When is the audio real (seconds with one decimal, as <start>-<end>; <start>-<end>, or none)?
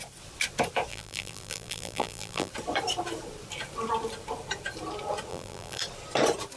0.0-0.9; 2.5-5.3; 5.8-6.6